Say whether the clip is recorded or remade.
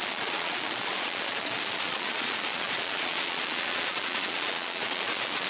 remade